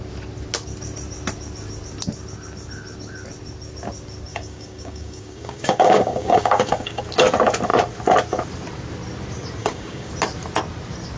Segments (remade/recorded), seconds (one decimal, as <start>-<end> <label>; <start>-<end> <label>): 0.0-4.3 recorded; 4.3-7.0 remade; 7.0-9.6 recorded; 9.6-10.1 remade; 10.1-11.2 recorded